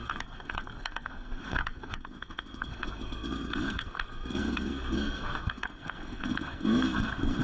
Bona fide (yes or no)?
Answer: no